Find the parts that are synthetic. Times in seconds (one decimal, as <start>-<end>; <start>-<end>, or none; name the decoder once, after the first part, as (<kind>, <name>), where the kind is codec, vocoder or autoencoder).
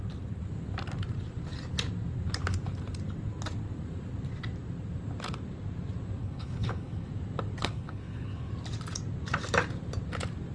6.2-7.1 (codec, HILCodec); 7.6-8.5